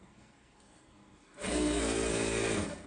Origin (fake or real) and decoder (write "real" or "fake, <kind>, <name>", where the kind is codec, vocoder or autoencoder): fake, codec, SNAC